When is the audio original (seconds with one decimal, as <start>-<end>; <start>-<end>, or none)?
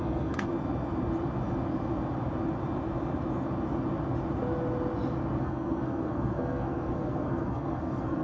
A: 0.5-5.4